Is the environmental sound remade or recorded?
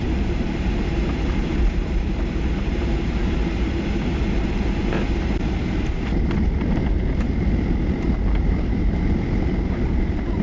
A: remade